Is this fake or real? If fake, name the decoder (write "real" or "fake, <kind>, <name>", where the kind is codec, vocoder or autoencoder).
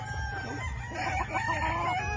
real